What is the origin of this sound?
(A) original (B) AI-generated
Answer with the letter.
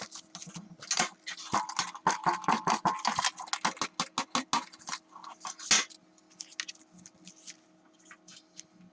A